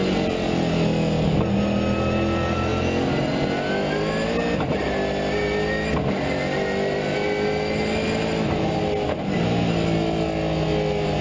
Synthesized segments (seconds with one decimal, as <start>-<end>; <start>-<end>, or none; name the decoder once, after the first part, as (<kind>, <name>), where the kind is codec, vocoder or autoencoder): none